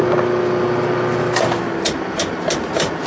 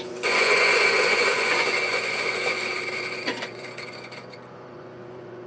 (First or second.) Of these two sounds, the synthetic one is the second